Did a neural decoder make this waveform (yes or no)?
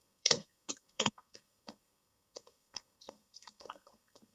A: yes